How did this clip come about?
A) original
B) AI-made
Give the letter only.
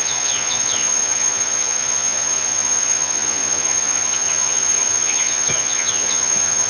B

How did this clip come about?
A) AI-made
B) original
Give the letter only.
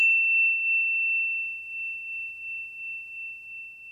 A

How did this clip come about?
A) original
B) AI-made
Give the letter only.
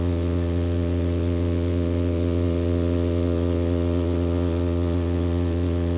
B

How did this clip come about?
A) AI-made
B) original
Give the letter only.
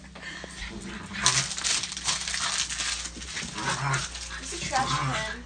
B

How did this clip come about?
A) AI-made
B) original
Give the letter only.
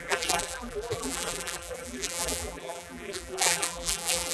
A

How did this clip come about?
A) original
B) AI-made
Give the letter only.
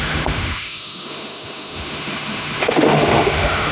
B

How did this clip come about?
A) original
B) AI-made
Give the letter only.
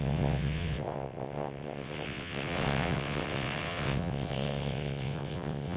B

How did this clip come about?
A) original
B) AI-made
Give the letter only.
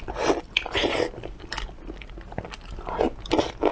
A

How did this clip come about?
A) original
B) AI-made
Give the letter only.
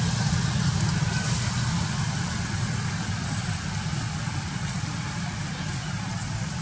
A